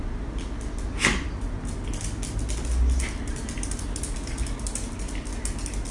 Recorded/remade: recorded